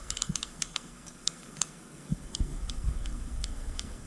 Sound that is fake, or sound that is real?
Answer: fake